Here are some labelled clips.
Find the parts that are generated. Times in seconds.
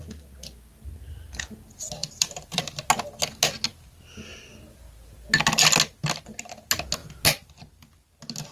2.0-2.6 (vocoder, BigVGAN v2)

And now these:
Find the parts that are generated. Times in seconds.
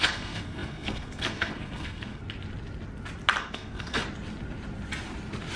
0.0-2.2 (codec, SNAC); 3.4-4.0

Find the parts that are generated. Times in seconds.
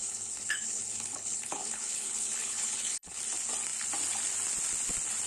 0.0-3.2 (codec, HILCodec)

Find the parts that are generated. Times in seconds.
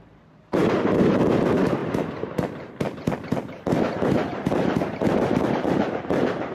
0.0-6.5 (vocoder, BigVGAN v2)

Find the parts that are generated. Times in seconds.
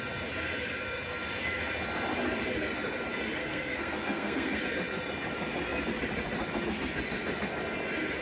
3.4-4.6 (codec, SNAC)